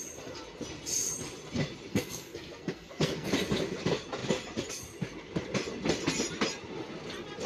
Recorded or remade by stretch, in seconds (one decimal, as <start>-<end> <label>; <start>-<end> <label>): 0.0-1.9 recorded; 1.9-3.3 remade; 3.3-7.5 recorded